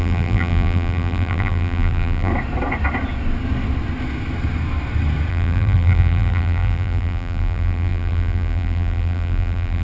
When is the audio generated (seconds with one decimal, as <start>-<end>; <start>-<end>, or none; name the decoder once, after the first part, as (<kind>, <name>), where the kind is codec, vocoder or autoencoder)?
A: 0.0-2.3 (vocoder, BigVGAN v2); 5.3-9.8